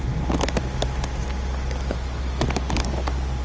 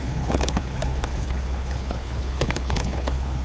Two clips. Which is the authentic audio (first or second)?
first